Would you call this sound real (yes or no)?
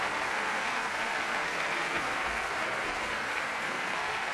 no